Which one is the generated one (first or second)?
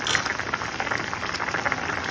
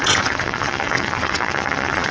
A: second